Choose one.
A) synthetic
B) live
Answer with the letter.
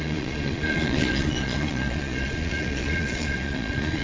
A